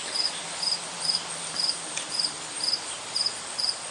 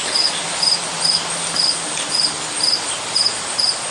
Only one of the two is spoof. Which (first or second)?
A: first